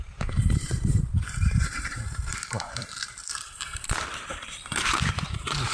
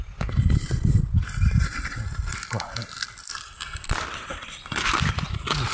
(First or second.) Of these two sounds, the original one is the second